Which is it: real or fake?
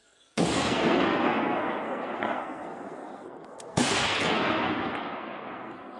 fake